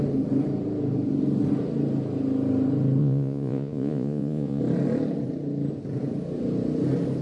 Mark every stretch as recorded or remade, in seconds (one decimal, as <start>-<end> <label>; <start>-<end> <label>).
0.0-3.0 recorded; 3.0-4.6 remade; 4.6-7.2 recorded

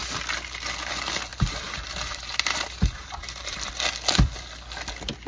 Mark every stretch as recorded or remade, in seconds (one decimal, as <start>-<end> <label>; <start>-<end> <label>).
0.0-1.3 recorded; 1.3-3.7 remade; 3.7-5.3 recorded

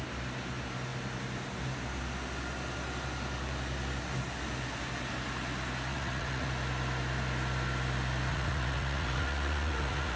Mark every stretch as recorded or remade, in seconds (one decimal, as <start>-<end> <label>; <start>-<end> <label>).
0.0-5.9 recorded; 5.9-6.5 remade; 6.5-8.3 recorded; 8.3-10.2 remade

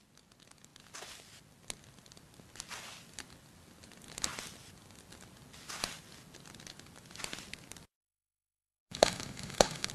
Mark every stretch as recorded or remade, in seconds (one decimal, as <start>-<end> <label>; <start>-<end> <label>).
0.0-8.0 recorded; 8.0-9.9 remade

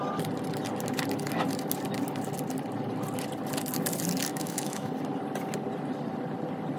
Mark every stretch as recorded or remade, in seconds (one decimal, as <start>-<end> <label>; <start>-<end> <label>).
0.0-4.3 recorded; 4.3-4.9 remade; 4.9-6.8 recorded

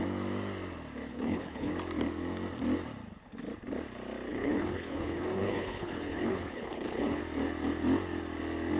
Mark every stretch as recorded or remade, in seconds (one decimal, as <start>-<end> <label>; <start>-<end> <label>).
0.0-1.1 recorded; 1.1-1.7 remade; 1.7-4.3 recorded; 4.3-7.2 remade; 7.2-8.8 recorded

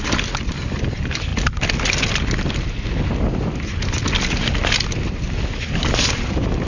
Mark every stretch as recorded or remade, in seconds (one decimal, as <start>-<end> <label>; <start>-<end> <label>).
0.0-1.3 remade; 1.3-5.3 recorded; 5.3-6.7 remade